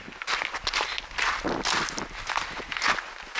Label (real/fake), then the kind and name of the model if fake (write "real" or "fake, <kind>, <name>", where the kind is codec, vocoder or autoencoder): real